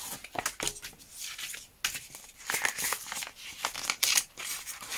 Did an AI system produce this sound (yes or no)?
no